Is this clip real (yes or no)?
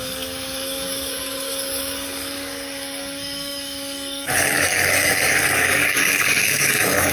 no